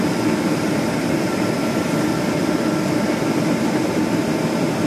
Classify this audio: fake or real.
real